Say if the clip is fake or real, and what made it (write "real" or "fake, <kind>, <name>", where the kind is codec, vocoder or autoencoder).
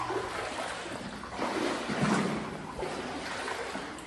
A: real